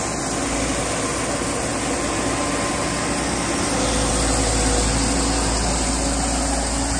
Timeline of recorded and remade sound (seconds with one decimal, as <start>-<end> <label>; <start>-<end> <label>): 0.0-7.0 recorded